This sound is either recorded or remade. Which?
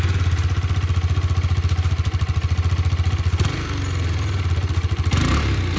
recorded